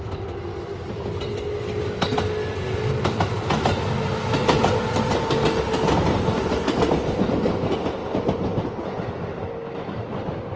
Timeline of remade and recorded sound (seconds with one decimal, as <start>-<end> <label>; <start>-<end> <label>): 0.0-8.0 recorded; 8.0-10.6 remade